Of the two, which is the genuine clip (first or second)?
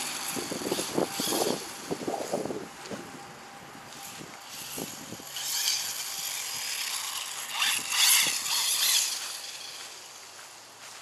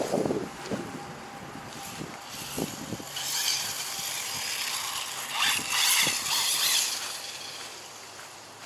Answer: first